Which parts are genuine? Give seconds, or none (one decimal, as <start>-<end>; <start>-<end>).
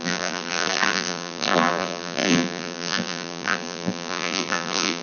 none